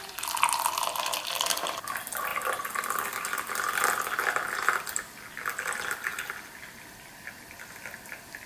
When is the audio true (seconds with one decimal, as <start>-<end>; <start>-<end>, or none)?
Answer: 0.0-8.5